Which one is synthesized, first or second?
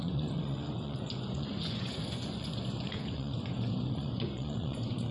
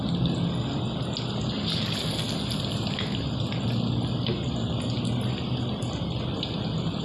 first